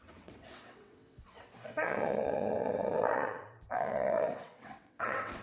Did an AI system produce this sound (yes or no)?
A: yes